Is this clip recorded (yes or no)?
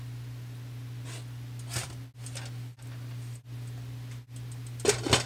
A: yes